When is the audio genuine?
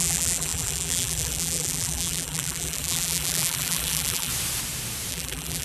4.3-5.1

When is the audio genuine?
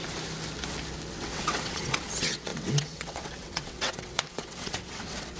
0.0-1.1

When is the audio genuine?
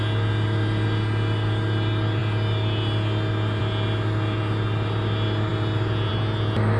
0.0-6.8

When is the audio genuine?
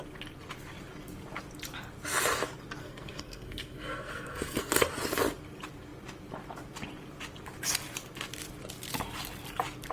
0.0-2.8; 4.7-9.9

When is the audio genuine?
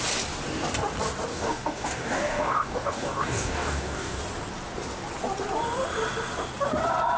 0.0-1.3; 4.2-7.2